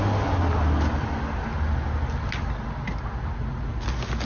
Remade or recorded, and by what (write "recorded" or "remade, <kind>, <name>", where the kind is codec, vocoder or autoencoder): recorded